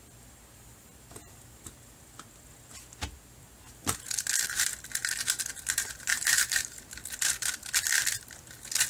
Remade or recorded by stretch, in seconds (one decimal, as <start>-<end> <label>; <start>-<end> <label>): 0.0-6.1 recorded; 6.1-6.8 remade; 6.8-8.9 recorded